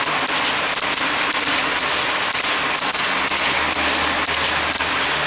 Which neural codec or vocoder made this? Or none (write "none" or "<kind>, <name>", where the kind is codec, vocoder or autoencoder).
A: none